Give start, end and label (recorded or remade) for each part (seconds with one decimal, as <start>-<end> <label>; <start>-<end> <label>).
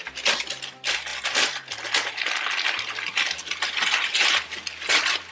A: 0.0-5.3 recorded